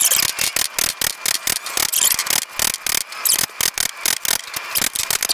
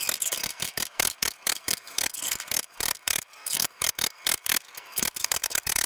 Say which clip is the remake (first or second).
second